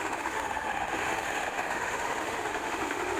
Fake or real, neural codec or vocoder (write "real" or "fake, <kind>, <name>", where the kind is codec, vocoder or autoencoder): fake, autoencoder, DAC-VAE